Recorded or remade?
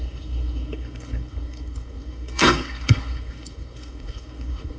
remade